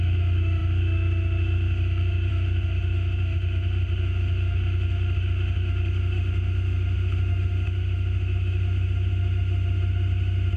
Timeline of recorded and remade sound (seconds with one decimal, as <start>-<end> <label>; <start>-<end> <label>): 0.0-10.6 remade